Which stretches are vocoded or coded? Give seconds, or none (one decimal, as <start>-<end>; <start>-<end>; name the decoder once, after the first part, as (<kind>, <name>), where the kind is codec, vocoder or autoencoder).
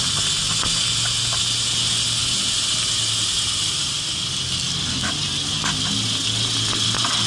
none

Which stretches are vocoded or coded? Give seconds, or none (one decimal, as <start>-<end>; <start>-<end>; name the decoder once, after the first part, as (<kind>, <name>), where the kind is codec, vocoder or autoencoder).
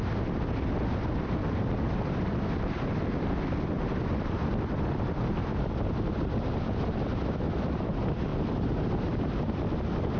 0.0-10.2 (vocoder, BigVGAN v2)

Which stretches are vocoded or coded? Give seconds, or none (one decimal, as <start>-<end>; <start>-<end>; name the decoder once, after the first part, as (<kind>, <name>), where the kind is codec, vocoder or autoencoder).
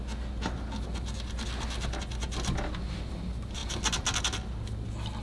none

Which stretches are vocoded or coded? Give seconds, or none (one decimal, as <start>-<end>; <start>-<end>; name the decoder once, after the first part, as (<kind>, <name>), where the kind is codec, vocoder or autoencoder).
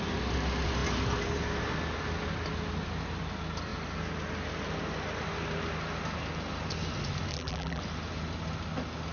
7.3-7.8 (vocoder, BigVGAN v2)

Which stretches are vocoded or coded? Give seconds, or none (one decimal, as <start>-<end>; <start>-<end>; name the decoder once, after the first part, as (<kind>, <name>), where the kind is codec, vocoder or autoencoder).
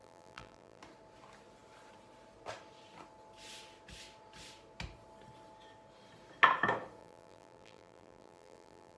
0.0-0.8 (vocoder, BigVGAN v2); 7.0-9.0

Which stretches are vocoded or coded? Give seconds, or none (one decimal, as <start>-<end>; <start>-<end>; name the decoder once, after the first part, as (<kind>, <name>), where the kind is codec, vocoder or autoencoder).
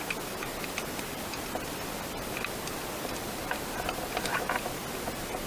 none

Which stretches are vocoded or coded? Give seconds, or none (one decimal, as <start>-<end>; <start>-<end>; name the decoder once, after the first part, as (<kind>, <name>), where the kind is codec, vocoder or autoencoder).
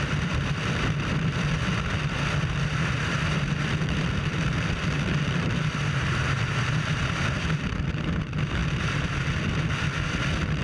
0.0-8.6 (vocoder, BigVGAN v2); 10.1-10.6